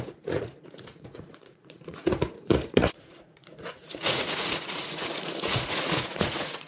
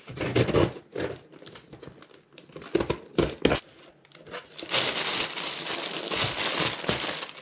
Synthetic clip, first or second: first